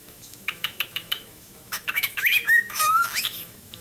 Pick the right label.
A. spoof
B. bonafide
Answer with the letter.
A